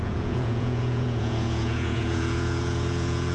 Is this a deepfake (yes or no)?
yes